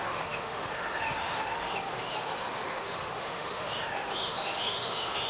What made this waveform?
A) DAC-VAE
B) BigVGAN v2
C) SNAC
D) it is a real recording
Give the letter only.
A